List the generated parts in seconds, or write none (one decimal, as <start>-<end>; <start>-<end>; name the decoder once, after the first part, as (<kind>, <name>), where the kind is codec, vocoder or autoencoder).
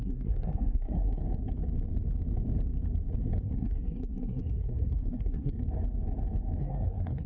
0.0-1.2 (codec, SNAC); 3.4-5.5; 6.6-7.3